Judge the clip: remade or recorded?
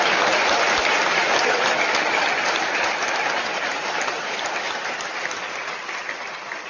recorded